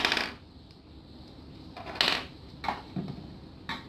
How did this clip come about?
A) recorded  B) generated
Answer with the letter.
A